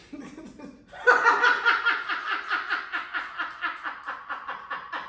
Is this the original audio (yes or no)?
yes